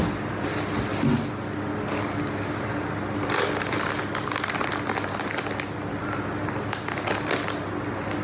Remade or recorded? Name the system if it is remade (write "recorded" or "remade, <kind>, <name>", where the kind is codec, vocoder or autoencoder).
recorded